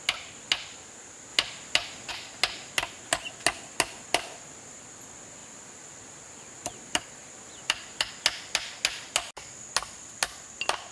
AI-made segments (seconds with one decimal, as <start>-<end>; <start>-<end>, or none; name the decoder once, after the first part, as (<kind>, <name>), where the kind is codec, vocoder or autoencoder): 4.1-4.9 (vocoder, BigVGAN v2); 5.4-8.1